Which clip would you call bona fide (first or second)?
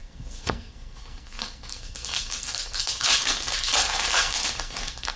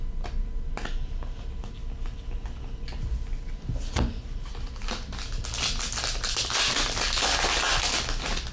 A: second